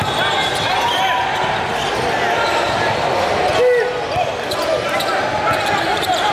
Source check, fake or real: real